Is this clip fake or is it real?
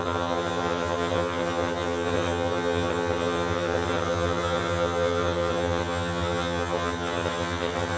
fake